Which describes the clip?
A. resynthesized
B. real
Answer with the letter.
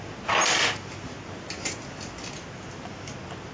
B